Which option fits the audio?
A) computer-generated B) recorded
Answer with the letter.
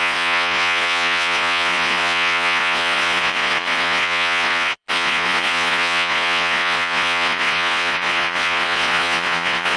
A